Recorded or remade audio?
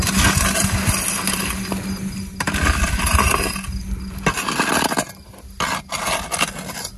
recorded